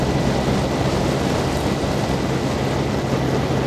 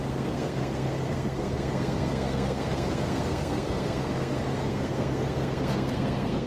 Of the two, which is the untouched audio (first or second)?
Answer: first